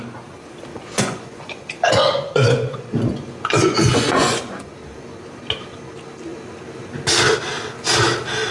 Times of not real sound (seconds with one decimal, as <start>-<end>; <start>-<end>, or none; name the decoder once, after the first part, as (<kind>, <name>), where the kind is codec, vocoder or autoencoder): 0.7-4.7 (vocoder, Vocos)